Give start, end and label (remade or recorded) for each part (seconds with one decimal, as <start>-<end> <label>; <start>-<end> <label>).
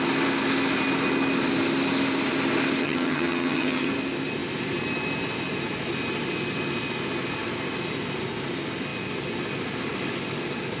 0.0-2.8 recorded; 2.8-3.9 remade; 3.9-10.8 recorded